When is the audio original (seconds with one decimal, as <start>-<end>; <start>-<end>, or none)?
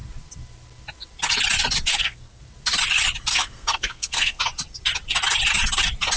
0.0-1.9; 2.4-3.3; 4.4-6.2